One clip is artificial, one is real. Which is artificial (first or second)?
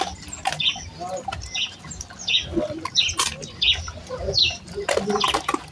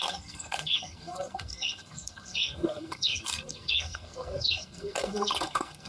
second